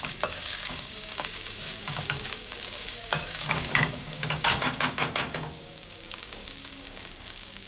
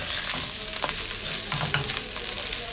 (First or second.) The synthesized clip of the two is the first